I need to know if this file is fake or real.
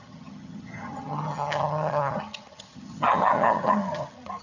fake